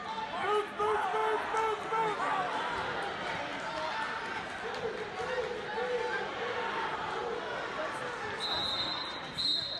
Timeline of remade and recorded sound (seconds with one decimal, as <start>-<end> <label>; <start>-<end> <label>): 0.0-9.8 recorded